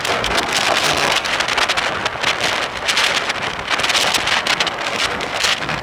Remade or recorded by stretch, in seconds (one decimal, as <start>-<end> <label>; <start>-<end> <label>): 0.0-1.3 remade; 1.3-4.6 recorded; 4.6-5.8 remade